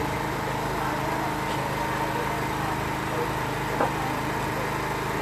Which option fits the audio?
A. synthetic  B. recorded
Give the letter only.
B